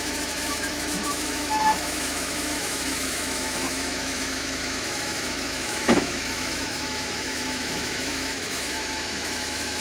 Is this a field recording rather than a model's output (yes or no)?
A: no